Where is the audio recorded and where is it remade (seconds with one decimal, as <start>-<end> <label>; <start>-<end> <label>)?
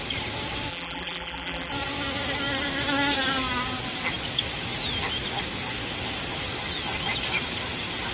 0.0-0.7 recorded; 0.7-1.7 remade; 1.7-8.1 recorded